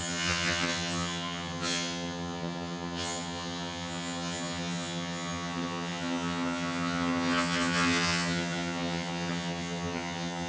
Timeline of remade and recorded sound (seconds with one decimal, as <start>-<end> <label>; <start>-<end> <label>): 0.0-10.5 remade